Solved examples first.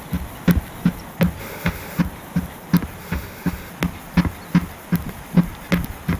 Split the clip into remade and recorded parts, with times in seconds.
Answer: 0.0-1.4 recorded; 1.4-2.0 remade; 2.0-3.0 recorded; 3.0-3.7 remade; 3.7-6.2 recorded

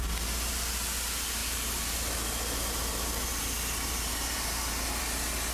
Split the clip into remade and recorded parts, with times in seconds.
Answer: 0.0-1.4 recorded; 1.4-4.7 remade; 4.7-5.5 recorded

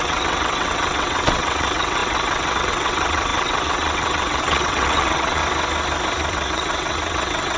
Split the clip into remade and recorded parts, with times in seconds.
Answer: 0.0-5.4 remade; 5.4-6.3 recorded; 6.3-7.6 remade

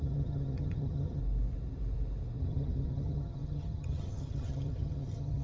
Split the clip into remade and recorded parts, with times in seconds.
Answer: 0.0-1.2 remade; 1.2-2.4 recorded; 2.4-5.4 remade

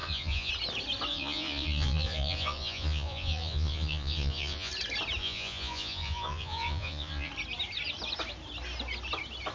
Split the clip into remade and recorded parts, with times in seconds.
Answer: 0.0-0.5 remade; 0.5-1.1 recorded; 1.1-4.7 remade; 4.7-5.2 recorded; 5.2-7.3 remade; 7.3-9.5 recorded

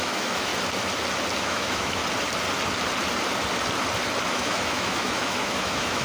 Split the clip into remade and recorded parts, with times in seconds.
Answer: 0.0-0.5 remade; 0.5-1.4 recorded; 1.4-2.0 remade; 2.0-4.3 recorded; 4.3-6.0 remade

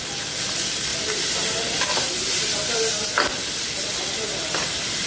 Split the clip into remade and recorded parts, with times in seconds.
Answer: 0.0-5.1 recorded